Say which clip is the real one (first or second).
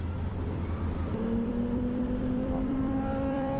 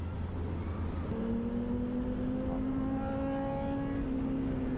second